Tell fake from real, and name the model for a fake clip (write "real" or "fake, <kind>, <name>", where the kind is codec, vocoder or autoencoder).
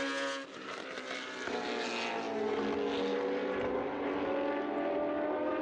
real